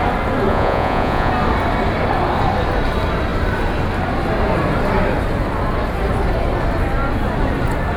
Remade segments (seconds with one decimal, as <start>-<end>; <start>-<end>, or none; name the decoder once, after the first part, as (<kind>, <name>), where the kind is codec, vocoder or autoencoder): 0.5-1.3 (vocoder, Vocos)